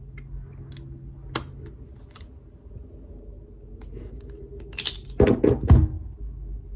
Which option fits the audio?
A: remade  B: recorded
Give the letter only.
B